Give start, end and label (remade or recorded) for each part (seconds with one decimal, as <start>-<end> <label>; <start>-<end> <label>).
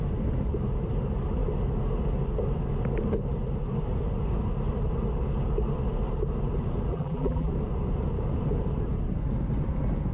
0.0-6.9 recorded; 6.9-7.5 remade; 7.5-10.1 recorded